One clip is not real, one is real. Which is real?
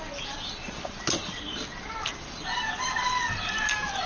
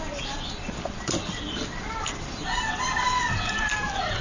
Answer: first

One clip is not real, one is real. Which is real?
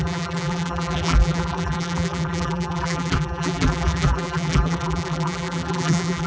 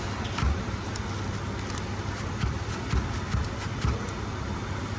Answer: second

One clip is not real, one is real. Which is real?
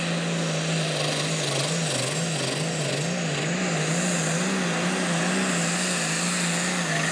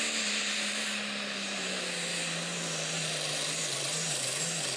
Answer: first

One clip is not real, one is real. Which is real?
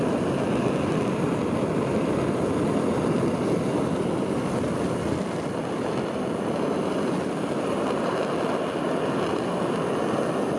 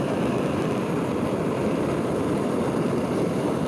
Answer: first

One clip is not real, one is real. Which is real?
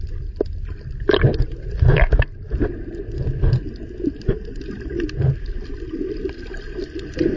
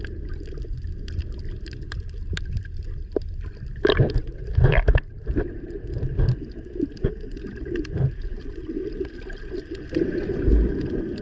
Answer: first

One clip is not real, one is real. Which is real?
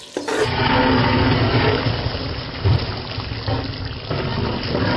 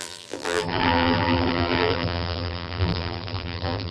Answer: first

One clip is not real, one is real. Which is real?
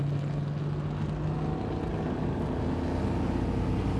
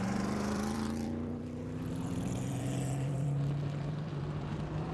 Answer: first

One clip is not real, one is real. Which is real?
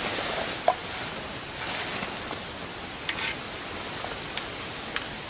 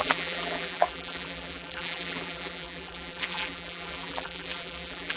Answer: first